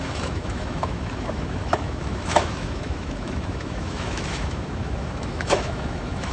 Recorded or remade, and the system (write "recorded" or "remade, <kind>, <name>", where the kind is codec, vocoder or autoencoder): remade, autoencoder, DAC-VAE